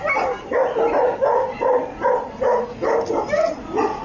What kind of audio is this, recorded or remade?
recorded